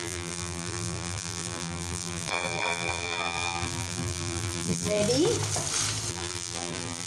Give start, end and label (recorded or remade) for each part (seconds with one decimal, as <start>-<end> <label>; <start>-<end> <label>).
0.0-5.0 remade; 5.0-6.1 recorded; 6.1-7.1 remade